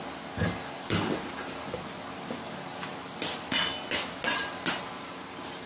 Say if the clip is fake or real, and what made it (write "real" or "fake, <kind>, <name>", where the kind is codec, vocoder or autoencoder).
real